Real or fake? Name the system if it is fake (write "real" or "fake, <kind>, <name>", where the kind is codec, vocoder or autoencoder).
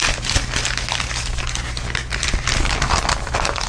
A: real